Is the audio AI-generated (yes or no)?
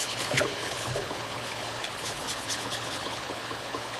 yes